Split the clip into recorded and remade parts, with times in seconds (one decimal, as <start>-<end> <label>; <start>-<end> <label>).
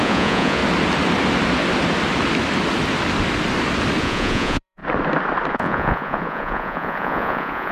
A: 0.0-0.6 remade; 0.6-4.0 recorded; 4.0-4.8 remade; 4.8-5.5 recorded; 5.5-7.7 remade